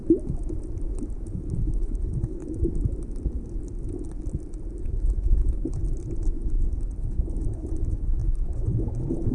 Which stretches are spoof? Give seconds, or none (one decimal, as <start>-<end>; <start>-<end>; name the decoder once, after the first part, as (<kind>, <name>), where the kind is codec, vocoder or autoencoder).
1.3-2.4 (codec, HILCodec); 4.8-5.8; 6.4-9.3